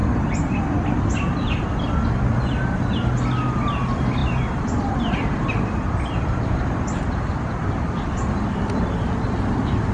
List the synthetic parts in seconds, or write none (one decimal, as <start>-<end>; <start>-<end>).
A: 4.2-8.1